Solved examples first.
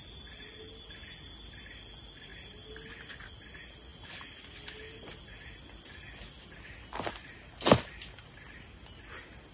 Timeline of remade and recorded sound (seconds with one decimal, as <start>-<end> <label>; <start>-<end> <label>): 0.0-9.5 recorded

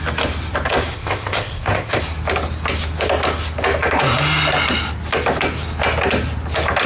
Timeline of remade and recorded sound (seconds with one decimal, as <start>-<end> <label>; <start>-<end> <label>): 0.0-0.9 recorded; 0.9-2.0 remade; 2.0-6.9 recorded

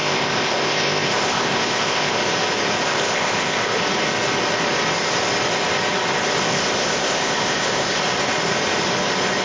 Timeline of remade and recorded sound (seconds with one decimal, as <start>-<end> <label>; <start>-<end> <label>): 0.0-2.2 remade; 2.2-2.8 recorded; 2.8-3.8 remade; 3.8-6.5 recorded; 6.5-8.0 remade; 8.0-9.4 recorded

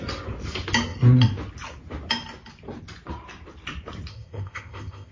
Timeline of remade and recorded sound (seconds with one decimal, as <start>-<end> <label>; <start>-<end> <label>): 0.0-4.1 recorded; 4.1-5.1 remade

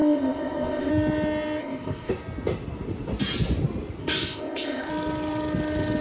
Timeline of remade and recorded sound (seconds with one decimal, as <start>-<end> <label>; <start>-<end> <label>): 0.0-0.9 remade; 0.9-1.6 recorded; 1.6-2.1 remade; 2.1-4.0 recorded; 4.0-4.9 remade; 4.9-6.0 recorded

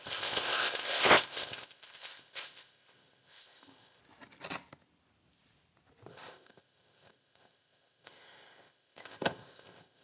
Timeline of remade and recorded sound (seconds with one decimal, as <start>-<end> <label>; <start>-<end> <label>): 0.0-4.0 remade; 4.0-6.1 recorded; 6.1-10.0 remade

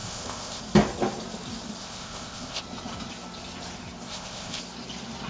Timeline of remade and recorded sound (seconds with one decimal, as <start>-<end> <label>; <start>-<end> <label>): 0.0-0.6 remade; 0.6-1.8 recorded; 1.8-2.6 remade; 2.6-4.1 recorded; 4.1-4.6 remade; 4.6-5.3 recorded

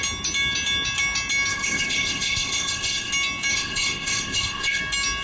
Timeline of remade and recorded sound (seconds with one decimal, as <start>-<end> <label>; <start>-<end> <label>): 0.0-1.5 recorded; 1.5-3.1 remade; 3.1-3.5 recorded; 3.5-4.8 remade; 4.8-5.2 recorded